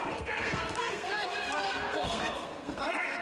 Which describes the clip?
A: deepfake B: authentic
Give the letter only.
A